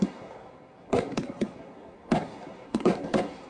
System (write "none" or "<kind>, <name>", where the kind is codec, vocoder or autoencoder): codec, SNAC